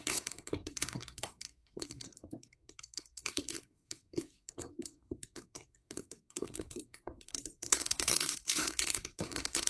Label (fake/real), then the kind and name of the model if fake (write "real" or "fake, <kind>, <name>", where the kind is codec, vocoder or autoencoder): fake, codec, SNAC